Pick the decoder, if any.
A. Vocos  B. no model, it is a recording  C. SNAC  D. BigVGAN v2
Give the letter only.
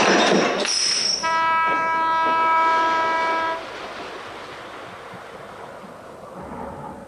B